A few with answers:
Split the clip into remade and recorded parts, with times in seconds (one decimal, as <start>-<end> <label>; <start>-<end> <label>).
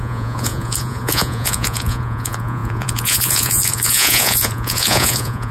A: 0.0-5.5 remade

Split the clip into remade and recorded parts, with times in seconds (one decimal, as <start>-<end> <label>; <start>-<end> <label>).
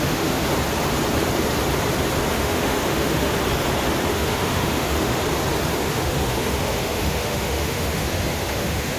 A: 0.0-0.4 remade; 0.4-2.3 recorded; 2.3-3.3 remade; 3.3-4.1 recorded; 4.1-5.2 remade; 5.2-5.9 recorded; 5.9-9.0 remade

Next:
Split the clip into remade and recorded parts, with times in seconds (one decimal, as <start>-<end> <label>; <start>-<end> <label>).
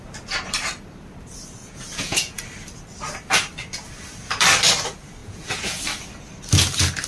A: 0.0-1.6 recorded; 1.6-2.4 remade; 2.4-5.2 recorded; 5.2-5.8 remade; 5.8-7.1 recorded